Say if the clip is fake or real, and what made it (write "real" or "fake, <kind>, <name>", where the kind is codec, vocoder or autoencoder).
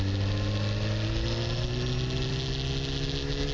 real